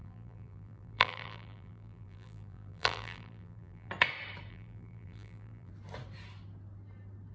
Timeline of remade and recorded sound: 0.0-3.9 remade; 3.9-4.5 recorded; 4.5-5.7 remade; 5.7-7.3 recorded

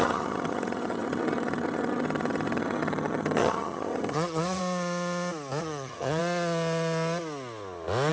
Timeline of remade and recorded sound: 0.0-4.6 remade; 4.6-5.6 recorded; 5.6-6.2 remade; 6.2-8.1 recorded